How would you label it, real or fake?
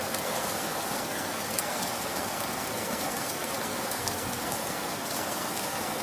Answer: fake